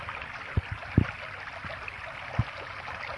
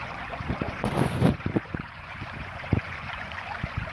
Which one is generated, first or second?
second